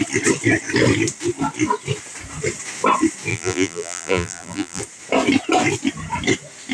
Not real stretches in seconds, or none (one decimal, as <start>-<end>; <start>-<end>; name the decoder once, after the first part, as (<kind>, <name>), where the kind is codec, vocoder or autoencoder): 3.3-4.8 (vocoder, BigVGAN v2)